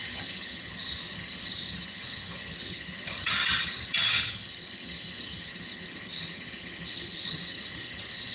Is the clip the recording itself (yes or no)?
no